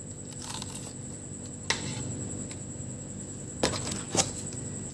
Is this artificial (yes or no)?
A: no